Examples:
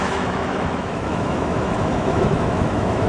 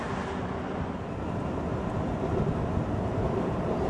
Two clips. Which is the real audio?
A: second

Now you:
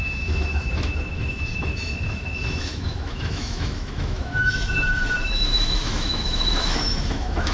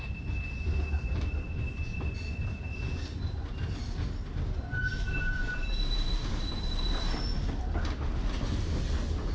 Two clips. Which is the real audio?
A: second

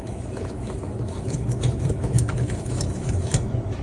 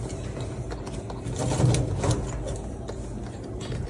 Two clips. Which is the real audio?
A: second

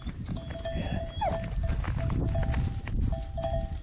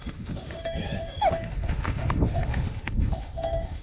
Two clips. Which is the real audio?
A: first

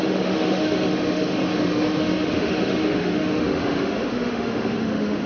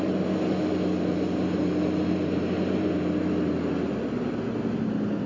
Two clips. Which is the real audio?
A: second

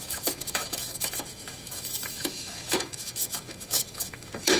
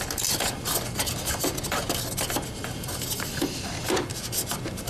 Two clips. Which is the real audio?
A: second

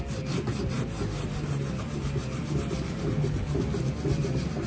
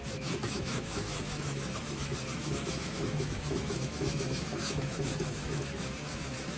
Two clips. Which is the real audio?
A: first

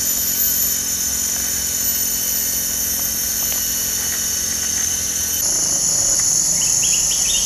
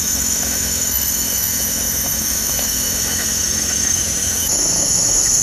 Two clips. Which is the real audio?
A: first